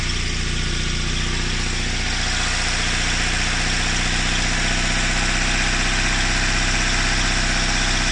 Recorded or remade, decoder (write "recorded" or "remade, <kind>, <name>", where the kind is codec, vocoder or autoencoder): recorded